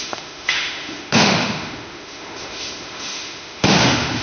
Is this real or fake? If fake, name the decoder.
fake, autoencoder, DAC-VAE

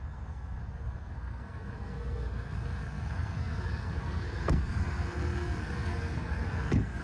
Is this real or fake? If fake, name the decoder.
fake, codec, SNAC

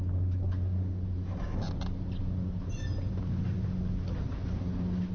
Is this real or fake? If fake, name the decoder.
real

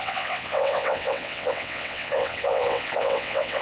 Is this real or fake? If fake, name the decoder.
fake, vocoder, WaveNeXt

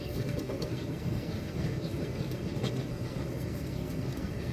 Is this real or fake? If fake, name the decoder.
fake, codec, SNAC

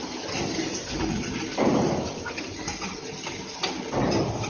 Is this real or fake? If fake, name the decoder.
real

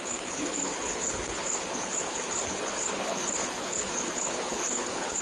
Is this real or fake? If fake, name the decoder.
fake, codec, HILCodec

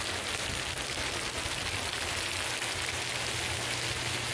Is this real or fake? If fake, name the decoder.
real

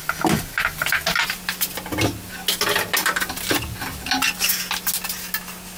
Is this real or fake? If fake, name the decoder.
real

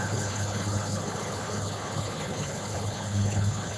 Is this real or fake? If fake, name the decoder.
fake, codec, HILCodec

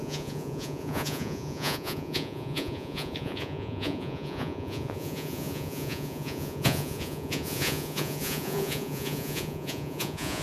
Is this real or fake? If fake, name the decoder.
fake, vocoder, Vocos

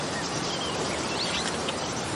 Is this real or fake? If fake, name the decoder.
real